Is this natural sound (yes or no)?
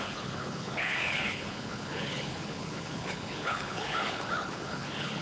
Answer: no